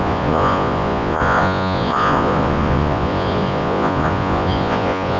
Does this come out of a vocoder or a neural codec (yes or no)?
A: yes